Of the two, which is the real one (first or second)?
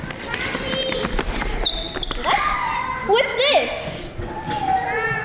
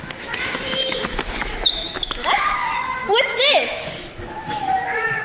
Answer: first